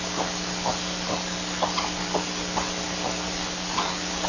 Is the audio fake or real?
real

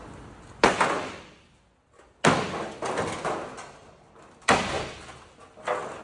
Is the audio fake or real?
real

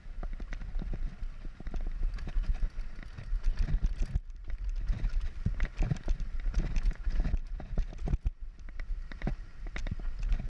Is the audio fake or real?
real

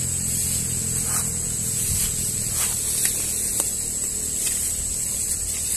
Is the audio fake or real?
real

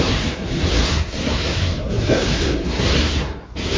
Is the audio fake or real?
fake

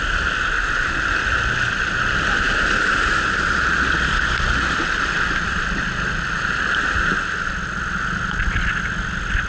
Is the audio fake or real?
real